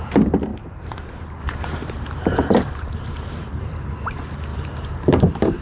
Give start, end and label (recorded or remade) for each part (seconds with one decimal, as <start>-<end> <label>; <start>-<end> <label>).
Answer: 0.0-0.5 recorded; 0.5-3.9 remade; 3.9-4.5 recorded; 4.5-5.6 remade